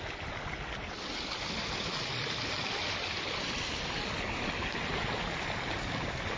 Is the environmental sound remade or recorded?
recorded